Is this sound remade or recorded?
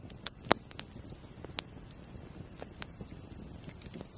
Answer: recorded